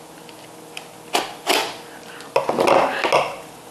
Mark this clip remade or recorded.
recorded